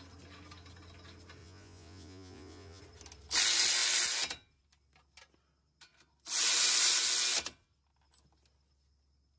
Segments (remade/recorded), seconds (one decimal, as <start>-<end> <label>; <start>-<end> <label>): 0.0-1.4 recorded; 1.4-2.8 remade; 2.8-9.4 recorded